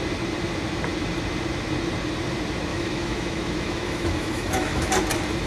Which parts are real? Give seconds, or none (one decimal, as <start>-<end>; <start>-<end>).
0.0-2.7; 4.9-5.5